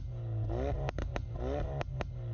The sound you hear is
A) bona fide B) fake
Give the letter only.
A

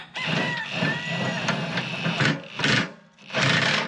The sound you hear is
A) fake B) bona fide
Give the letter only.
B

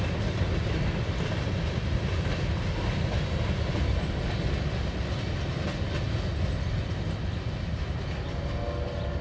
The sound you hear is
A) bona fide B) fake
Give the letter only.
A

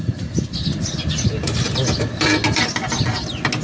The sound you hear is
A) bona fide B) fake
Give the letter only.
A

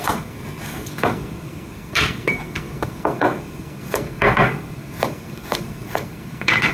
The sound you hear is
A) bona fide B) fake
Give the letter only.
B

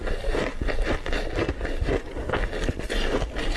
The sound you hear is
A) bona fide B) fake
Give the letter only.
A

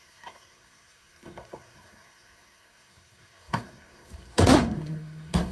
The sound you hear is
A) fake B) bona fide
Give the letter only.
A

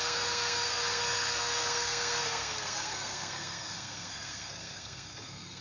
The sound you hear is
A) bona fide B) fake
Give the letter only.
B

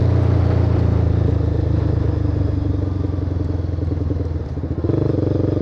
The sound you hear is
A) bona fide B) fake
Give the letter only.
A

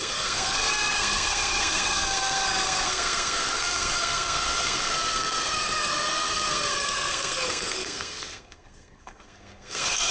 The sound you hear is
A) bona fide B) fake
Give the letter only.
B